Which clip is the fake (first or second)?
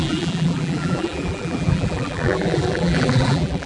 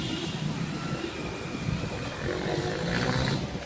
first